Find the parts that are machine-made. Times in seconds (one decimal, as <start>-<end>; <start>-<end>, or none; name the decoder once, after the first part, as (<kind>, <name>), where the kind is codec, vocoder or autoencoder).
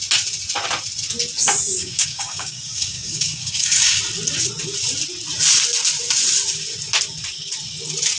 1.8-4.0 (codec, DAC)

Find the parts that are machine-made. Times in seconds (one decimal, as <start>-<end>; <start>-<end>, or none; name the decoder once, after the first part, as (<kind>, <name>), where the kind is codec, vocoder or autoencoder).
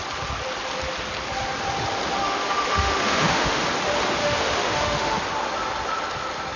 2.2-3.6 (autoencoder, DAC-VAE); 4.2-5.2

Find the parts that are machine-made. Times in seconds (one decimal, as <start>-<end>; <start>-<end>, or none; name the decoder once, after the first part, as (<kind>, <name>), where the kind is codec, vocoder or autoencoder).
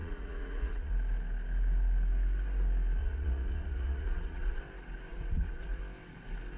0.0-0.9 (vocoder, Vocos); 3.0-4.6; 5.1-5.8